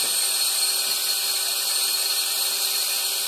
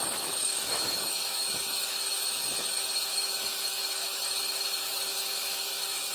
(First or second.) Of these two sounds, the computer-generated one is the second